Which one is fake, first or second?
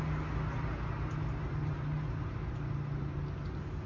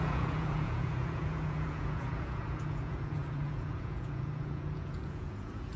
second